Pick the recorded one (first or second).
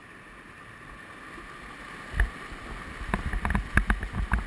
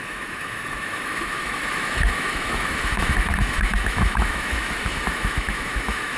first